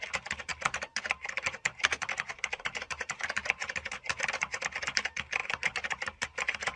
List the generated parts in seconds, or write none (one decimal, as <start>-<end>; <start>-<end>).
0.5-4.6; 5.4-6.8